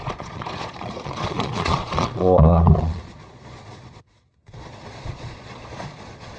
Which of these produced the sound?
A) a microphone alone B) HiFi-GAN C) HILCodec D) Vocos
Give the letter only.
D